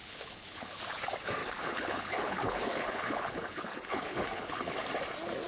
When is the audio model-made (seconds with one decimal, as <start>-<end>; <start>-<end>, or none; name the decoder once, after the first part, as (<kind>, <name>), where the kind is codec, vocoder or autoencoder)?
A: 0.0-0.8 (codec, HILCodec); 1.4-4.7